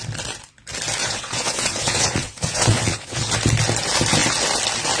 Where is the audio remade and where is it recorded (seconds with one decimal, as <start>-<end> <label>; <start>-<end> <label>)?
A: 0.0-1.0 recorded; 1.0-3.3 remade; 3.3-5.0 recorded